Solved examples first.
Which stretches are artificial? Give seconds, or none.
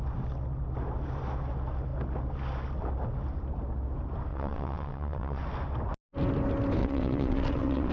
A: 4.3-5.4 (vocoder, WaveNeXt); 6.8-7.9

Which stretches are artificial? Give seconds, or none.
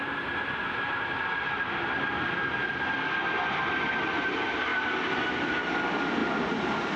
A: 4.7-5.6 (vocoder, BigVGAN v2); 6.2-7.0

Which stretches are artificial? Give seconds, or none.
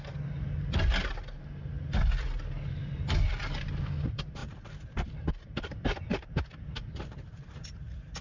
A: none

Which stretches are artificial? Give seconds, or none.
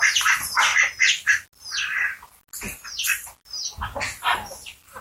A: none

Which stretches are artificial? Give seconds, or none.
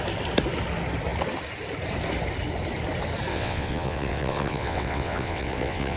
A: 3.3-6.0 (vocoder, WaveNeXt)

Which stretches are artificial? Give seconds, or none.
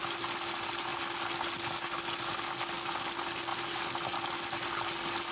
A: none